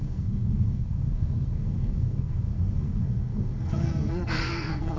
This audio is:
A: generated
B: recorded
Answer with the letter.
A